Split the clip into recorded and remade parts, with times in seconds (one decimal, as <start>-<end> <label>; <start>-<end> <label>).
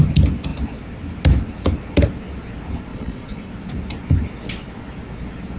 0.0-2.9 recorded; 2.9-3.5 remade; 3.5-5.6 recorded